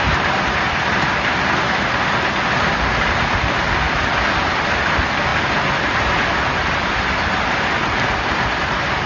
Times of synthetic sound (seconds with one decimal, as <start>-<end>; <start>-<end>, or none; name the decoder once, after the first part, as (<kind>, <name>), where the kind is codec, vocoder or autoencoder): none